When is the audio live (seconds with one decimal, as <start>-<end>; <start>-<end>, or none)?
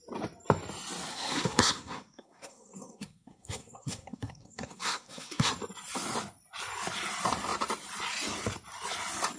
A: 0.0-1.1; 5.5-9.4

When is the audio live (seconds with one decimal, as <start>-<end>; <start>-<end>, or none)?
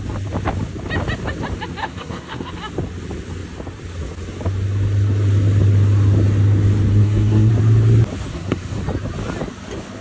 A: 0.0-1.8; 2.5-6.9; 7.5-8.3; 8.8-10.0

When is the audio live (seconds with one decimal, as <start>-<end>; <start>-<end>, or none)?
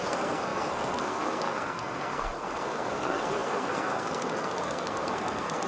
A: none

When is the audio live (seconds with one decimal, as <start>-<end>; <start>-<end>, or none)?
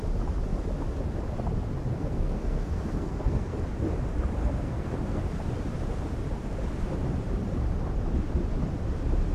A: 0.0-1.9; 3.6-4.4; 5.2-9.3